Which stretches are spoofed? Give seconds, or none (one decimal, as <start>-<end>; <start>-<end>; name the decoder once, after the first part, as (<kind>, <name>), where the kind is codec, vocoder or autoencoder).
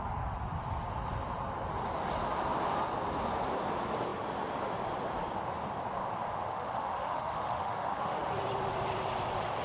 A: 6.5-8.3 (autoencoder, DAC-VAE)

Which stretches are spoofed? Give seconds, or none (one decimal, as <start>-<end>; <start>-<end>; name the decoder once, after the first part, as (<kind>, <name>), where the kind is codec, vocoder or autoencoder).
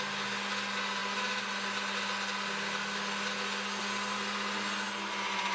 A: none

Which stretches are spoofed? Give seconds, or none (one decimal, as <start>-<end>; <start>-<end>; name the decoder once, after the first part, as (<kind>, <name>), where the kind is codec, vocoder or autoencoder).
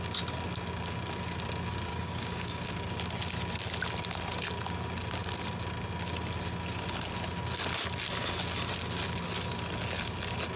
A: 1.9-2.7 (codec, DAC)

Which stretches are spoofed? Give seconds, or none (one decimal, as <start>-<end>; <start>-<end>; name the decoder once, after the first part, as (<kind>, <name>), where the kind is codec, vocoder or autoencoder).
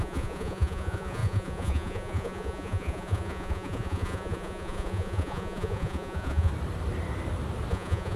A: 0.0-6.5 (vocoder, Vocos); 7.7-8.2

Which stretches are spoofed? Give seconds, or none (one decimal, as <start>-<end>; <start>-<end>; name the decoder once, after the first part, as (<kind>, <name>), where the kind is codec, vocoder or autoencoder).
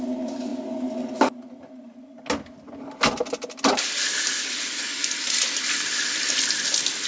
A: none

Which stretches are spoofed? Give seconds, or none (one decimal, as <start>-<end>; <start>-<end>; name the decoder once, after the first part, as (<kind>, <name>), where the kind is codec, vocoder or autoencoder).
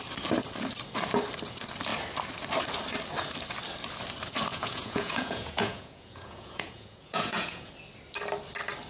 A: 4.5-7.7 (vocoder, Vocos)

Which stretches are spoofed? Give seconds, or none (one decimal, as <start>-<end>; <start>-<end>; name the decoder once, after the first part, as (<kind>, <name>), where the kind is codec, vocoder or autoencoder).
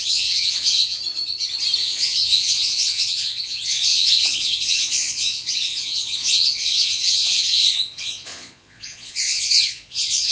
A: 0.0-1.0 (vocoder, Vocos); 1.8-10.3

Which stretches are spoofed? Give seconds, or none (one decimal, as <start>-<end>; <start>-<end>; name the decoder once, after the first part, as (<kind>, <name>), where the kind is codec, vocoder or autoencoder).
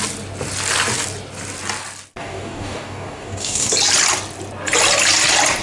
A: 2.2-3.7 (codec, DAC)